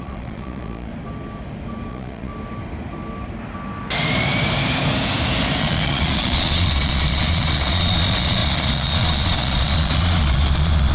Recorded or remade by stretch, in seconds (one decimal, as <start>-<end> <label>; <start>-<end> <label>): 0.0-0.9 remade; 0.9-1.9 recorded; 1.9-2.3 remade; 2.3-5.6 recorded; 5.6-10.9 remade